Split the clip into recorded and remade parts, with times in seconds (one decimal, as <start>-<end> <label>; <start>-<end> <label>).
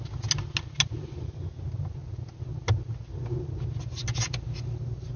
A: 0.0-5.2 recorded